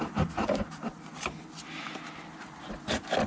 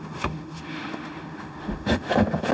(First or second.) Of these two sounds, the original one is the first